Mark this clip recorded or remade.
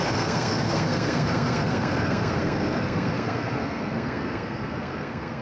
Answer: remade